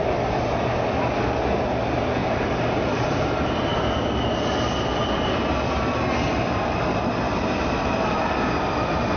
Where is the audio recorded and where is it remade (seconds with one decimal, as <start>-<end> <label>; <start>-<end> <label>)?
0.0-2.2 recorded; 2.2-3.2 remade; 3.2-3.7 recorded; 3.7-4.6 remade; 4.6-9.2 recorded